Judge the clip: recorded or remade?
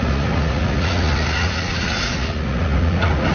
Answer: remade